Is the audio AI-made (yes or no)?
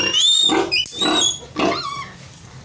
no